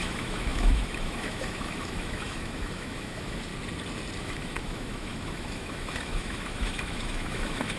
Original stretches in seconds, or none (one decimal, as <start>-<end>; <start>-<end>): 3.5-4.2